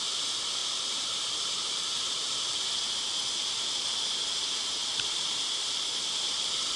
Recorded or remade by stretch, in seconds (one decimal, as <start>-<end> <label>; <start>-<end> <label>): 0.0-0.6 recorded; 0.6-2.8 remade; 2.8-4.8 recorded; 4.8-5.7 remade; 5.7-6.8 recorded